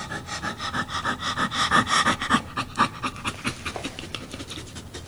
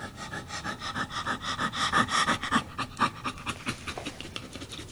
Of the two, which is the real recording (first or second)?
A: first